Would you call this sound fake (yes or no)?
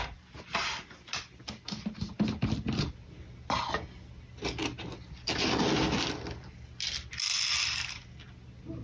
no